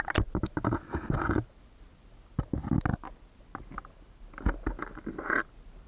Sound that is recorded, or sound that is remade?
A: recorded